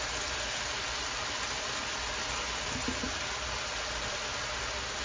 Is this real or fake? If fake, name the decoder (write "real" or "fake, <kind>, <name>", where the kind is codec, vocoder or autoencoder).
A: real